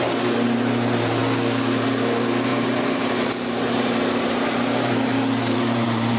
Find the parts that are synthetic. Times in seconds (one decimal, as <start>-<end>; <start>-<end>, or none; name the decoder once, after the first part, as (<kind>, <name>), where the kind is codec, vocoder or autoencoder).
0.0-1.2 (vocoder, BigVGAN v2); 2.1-6.2